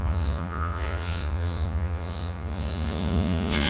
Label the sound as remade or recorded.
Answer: remade